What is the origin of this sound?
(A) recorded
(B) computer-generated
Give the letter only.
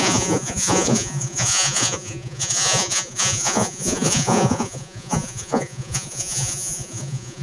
B